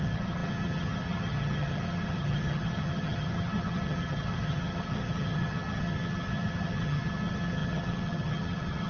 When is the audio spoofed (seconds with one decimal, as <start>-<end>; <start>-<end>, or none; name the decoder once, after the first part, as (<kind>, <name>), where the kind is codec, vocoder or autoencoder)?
0.0-8.9 (vocoder, HiFi-GAN)